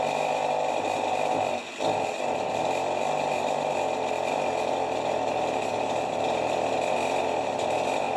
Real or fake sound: real